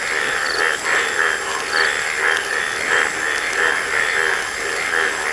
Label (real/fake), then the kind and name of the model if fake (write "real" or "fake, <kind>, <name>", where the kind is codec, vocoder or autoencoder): real